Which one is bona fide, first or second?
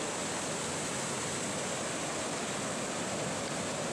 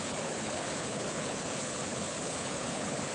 first